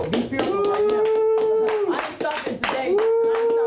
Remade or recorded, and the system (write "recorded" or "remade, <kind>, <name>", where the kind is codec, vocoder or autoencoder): recorded